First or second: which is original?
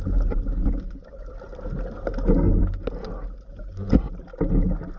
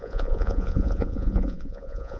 first